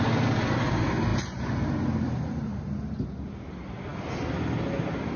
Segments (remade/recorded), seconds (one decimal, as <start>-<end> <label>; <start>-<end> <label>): 0.0-5.2 recorded